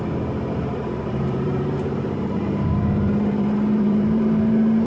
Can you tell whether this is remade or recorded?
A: remade